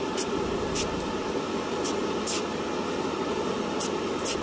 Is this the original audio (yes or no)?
no